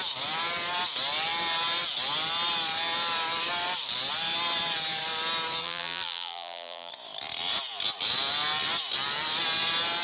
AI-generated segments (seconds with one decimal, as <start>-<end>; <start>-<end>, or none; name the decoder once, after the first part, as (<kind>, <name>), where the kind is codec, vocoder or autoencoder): 5.6-6.9 (vocoder, BigVGAN v2)